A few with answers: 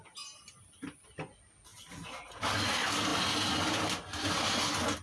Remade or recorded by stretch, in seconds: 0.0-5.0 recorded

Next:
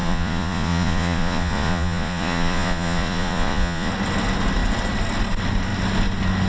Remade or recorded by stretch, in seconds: 0.0-3.9 remade; 3.9-6.5 recorded

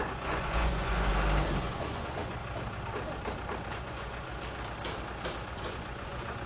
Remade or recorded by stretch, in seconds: 0.0-1.1 remade; 1.1-1.6 recorded; 1.6-2.4 remade; 2.4-3.7 recorded; 3.7-4.3 remade; 4.3-5.5 recorded; 5.5-6.5 remade

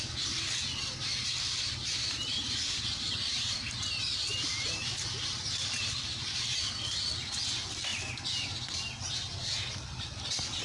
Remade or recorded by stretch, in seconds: 0.0-10.6 recorded

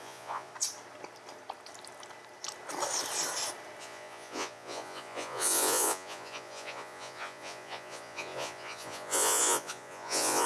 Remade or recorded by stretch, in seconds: 0.0-0.5 remade; 0.5-3.8 recorded; 3.8-10.5 remade

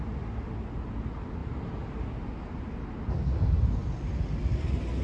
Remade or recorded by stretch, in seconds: 0.0-5.0 recorded